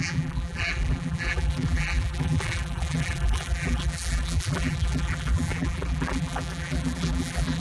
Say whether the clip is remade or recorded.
remade